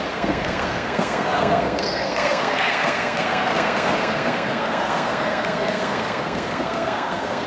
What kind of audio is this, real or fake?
fake